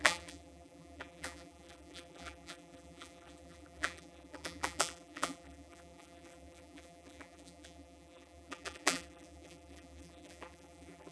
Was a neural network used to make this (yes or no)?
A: yes